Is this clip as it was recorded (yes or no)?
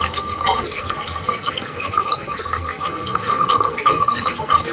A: no